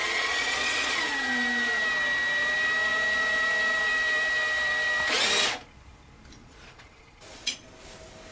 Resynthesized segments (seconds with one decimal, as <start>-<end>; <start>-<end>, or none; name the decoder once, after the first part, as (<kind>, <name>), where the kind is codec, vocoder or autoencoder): 0.0-1.1 (vocoder, Vocos); 6.4-7.7